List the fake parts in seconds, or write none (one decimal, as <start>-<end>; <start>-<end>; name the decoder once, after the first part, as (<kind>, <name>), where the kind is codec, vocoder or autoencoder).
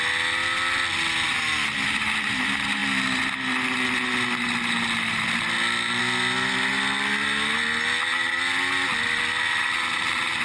none